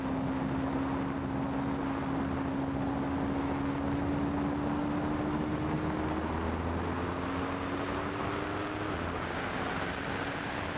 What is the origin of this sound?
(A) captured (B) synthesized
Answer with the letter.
A